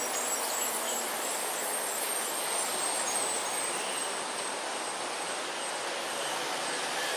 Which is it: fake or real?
real